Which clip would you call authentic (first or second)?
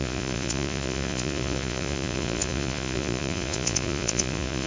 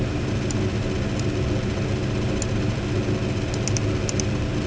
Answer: second